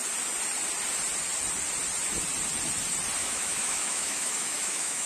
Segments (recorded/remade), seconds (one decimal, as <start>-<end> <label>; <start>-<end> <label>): 0.0-3.2 recorded; 3.2-5.1 remade